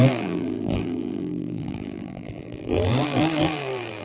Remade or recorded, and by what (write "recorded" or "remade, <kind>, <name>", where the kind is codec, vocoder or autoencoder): remade, vocoder, BigVGAN v2